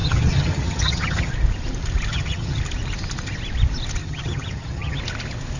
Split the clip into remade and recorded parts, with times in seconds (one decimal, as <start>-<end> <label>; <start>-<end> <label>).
0.0-1.3 remade; 1.3-2.1 recorded; 2.1-2.6 remade; 2.6-4.0 recorded; 4.0-5.0 remade; 5.0-5.6 recorded